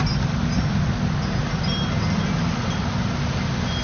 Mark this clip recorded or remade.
recorded